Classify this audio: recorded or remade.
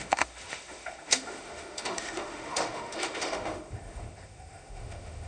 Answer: remade